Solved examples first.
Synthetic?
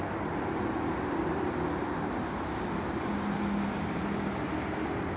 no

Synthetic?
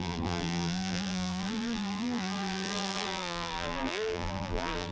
yes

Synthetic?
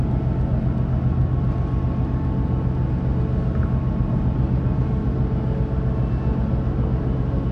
no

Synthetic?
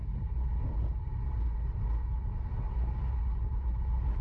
no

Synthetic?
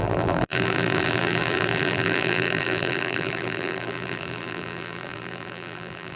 yes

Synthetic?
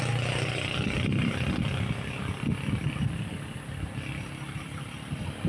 yes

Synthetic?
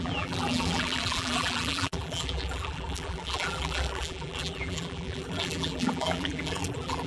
yes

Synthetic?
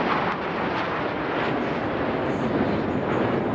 no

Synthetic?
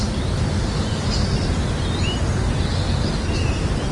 no